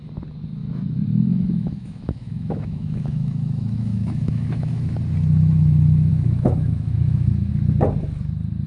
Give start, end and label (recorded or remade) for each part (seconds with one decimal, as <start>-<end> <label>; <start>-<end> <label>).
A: 0.0-0.6 recorded; 0.6-4.9 remade; 4.9-6.1 recorded; 6.1-7.5 remade; 7.5-8.7 recorded